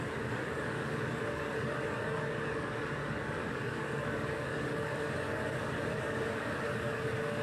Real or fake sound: fake